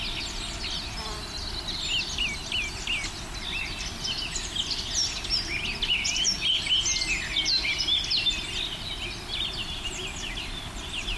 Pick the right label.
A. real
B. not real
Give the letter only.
A